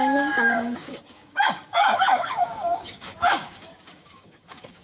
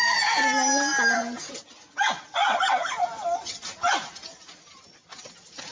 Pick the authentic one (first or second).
second